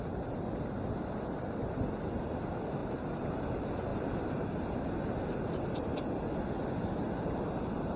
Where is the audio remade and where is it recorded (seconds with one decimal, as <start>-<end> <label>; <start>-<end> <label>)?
0.0-2.8 recorded; 2.8-3.4 remade; 3.4-3.9 recorded; 3.9-4.4 remade; 4.4-8.0 recorded